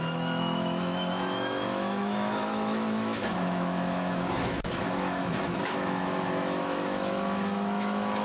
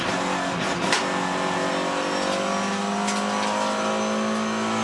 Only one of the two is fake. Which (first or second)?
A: first